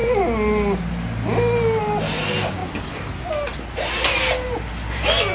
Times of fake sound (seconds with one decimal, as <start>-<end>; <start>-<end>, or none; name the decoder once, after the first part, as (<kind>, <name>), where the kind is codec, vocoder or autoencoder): none